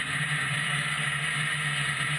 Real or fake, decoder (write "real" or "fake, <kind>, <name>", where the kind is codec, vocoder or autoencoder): fake, vocoder, BigVGAN v2